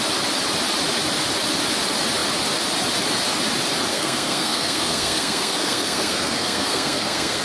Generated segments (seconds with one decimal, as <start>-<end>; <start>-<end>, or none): 3.9-7.4